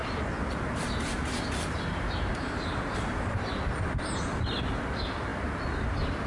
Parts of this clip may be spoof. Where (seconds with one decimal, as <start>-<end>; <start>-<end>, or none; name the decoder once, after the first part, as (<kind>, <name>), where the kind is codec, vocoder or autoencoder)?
0.0-3.6 (vocoder, BigVGAN v2)